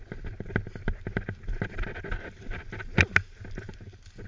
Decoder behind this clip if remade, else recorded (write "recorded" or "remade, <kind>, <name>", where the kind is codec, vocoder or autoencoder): recorded